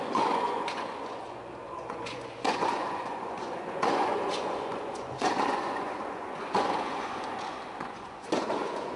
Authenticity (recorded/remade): remade